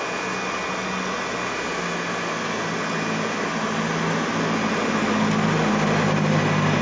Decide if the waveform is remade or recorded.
recorded